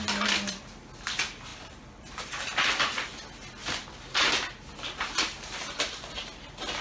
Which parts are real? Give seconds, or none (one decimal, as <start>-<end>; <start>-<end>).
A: 0.0-6.8